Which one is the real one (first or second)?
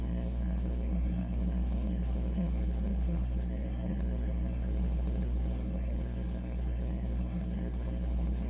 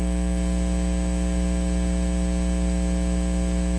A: second